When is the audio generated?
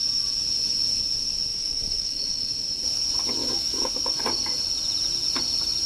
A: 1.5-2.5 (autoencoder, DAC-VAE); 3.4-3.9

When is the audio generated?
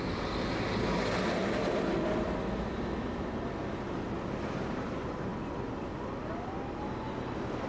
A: 1.4-3.8 (vocoder, BigVGAN v2); 5.3-6.5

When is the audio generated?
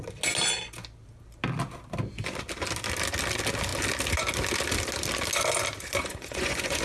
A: 6.0-6.8 (vocoder, Vocos)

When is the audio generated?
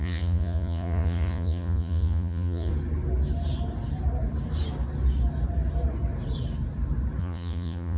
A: 0.0-2.7 (vocoder, Vocos); 7.2-8.0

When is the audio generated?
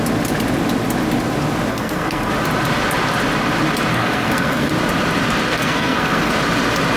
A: 1.7-2.3 (codec, SNAC); 3.9-4.7; 5.5-6.3